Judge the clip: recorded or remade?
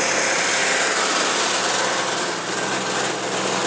recorded